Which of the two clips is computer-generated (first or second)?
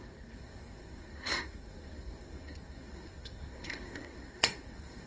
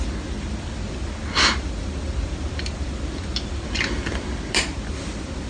first